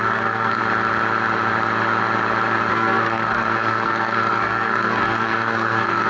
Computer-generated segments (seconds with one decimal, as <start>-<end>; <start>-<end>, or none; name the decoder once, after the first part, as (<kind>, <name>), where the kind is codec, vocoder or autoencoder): 0.0-0.6 (codec, SNAC); 2.7-6.1